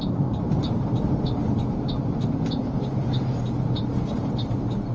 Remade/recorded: remade